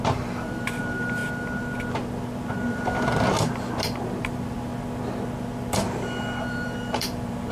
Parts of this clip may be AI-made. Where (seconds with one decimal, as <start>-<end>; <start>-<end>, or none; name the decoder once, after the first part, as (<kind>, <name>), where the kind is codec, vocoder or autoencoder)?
0.0-1.2 (vocoder, BigVGAN v2); 4.2-4.7; 6.4-7.5